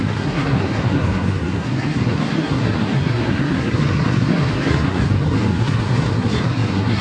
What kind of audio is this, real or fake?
fake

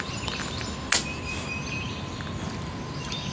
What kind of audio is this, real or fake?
real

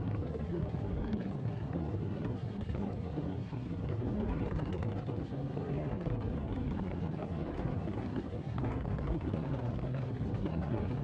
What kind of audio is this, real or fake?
fake